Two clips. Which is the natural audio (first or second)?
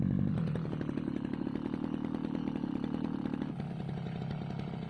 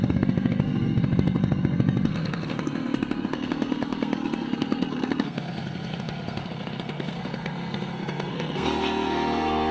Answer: first